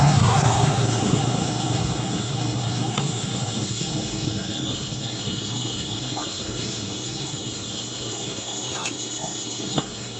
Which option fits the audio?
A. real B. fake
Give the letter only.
B